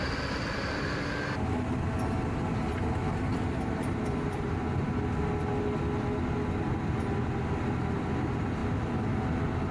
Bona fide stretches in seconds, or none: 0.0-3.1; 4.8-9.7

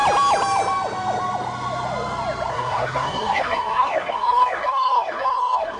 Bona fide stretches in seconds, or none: 0.0-2.5

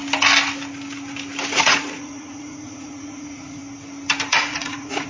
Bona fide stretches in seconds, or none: 0.0-1.5; 3.6-4.3

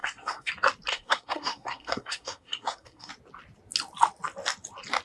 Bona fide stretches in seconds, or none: 0.5-0.9; 3.1-5.0

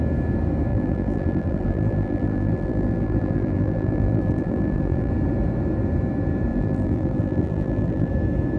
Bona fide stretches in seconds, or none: 0.0-0.7; 5.1-6.5; 8.1-8.6

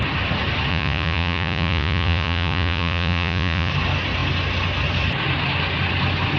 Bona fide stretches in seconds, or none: 0.0-0.7; 3.7-6.4